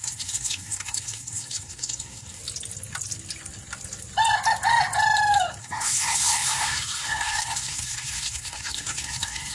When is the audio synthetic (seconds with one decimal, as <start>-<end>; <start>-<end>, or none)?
0.0-2.4; 5.6-9.5